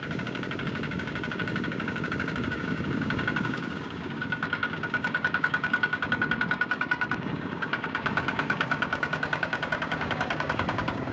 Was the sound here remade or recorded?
remade